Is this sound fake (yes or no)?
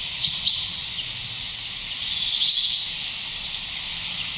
no